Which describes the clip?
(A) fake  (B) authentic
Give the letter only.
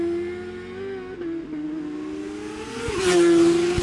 B